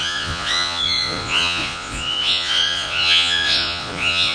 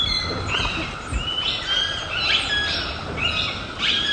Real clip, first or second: second